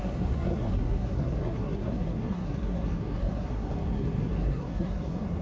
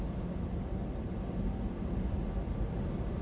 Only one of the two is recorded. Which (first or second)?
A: second